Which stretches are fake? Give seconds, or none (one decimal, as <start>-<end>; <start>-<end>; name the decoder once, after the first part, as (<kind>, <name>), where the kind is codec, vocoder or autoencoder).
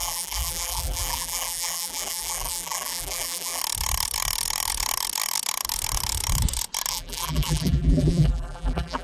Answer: 0.0-3.6 (vocoder, BigVGAN v2); 6.9-9.0